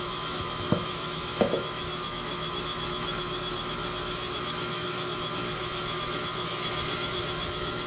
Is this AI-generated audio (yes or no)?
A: yes